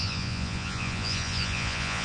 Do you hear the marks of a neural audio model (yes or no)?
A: yes